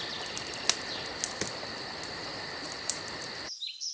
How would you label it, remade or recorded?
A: recorded